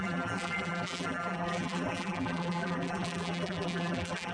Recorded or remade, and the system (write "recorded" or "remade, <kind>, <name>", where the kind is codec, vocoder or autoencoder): remade, vocoder, BigVGAN v2